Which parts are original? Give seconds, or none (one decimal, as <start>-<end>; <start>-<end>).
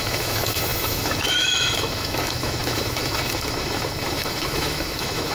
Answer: none